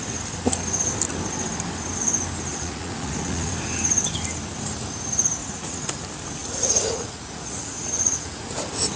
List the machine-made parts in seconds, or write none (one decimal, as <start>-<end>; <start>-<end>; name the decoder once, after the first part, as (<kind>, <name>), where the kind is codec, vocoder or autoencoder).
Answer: 2.5-3.5 (vocoder, Vocos); 5.4-5.9; 6.4-8.6